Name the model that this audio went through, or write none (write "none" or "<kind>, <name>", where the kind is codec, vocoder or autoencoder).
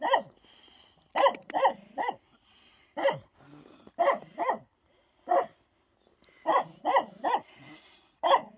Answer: none